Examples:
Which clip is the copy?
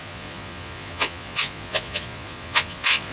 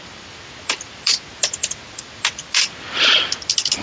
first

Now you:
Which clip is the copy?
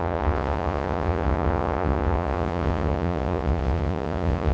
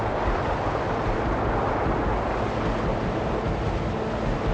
first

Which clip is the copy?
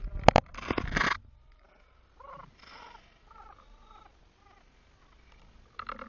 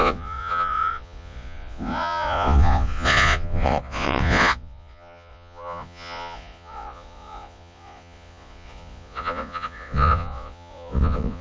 second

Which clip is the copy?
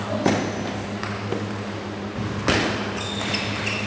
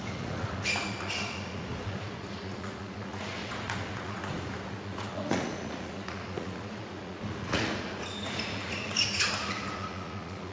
second